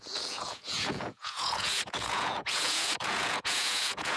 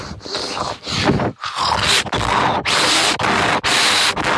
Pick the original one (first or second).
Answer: second